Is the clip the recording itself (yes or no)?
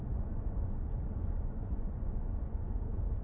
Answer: no